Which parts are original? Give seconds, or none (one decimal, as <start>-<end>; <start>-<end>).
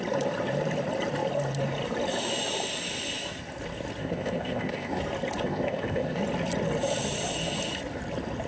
0.0-4.0; 5.0-5.4; 6.2-8.5